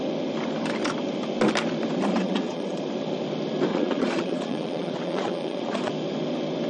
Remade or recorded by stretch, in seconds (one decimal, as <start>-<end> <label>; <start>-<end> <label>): 0.0-2.1 recorded; 2.1-2.8 remade; 2.8-3.7 recorded; 3.7-5.9 remade; 5.9-6.7 recorded